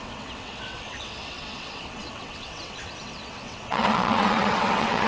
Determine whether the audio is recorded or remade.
remade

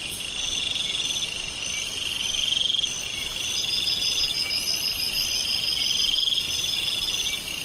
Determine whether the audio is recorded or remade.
recorded